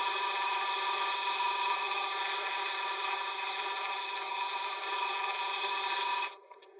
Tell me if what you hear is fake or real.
fake